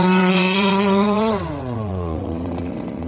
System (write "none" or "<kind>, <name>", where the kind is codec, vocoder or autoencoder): vocoder, WaveNeXt